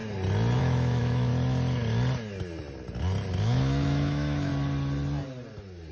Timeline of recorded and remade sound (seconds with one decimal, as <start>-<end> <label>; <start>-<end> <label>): 0.0-0.6 recorded; 0.6-1.3 remade; 1.3-3.4 recorded; 3.4-4.5 remade; 4.5-5.9 recorded